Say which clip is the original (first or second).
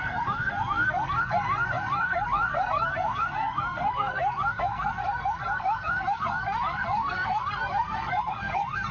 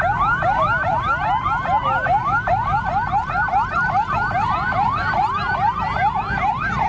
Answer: second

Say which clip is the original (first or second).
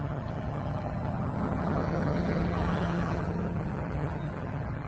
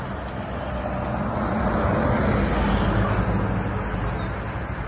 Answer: second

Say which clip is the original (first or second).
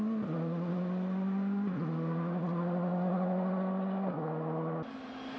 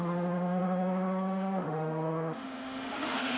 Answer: first